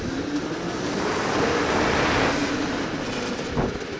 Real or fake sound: real